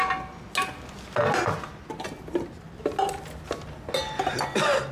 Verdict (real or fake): real